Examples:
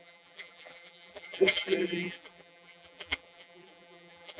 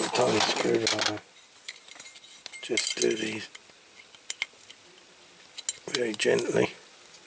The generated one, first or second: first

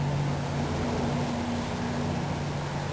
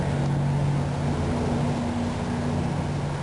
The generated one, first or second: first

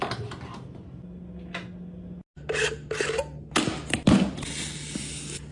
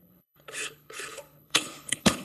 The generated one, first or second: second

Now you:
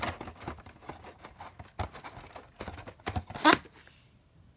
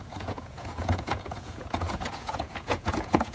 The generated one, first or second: second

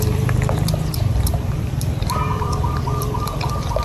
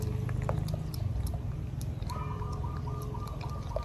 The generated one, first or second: first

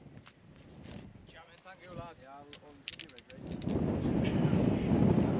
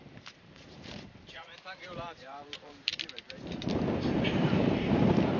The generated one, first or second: second